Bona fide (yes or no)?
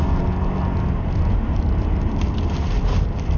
yes